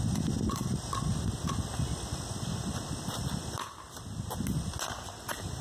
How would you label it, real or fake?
real